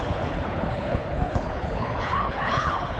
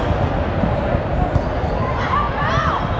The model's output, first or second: first